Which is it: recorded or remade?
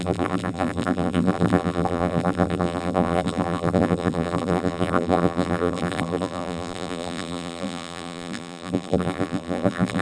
remade